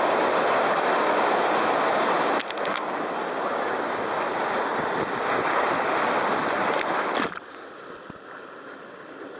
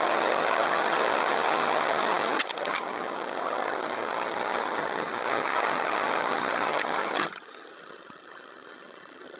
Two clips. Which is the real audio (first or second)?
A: first